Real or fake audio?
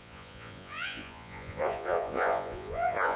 fake